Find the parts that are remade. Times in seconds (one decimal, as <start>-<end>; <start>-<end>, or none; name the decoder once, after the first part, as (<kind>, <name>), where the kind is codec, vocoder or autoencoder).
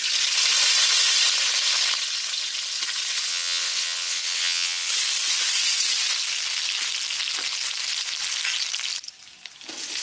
3.3-4.9 (vocoder, WaveNeXt)